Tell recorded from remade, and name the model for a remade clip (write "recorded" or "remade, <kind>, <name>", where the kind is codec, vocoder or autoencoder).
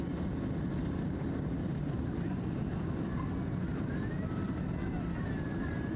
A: remade, vocoder, BigVGAN v2